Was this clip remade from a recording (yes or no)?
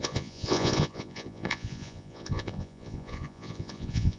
yes